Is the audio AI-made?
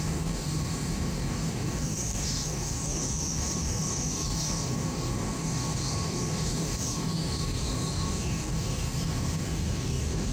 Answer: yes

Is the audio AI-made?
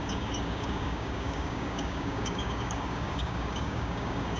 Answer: yes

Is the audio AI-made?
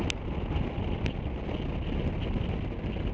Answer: no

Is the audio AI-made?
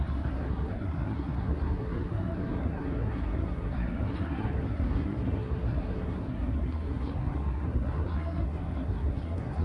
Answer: yes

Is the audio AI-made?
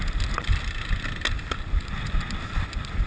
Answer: no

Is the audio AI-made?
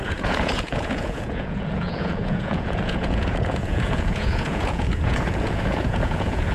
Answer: yes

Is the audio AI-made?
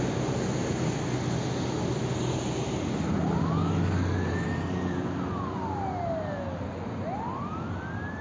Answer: no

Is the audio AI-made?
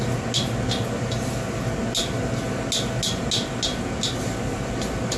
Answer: no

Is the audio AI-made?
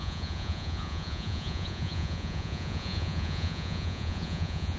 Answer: yes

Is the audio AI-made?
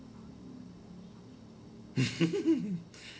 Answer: no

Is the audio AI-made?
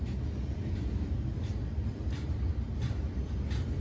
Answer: no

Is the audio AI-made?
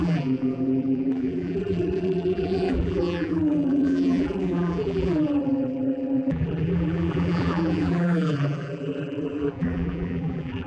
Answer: yes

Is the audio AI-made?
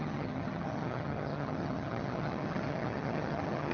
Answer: yes